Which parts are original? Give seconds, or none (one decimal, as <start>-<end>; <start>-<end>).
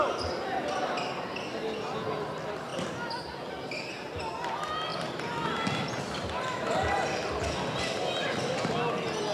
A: 0.0-2.7; 3.5-4.9; 8.6-9.3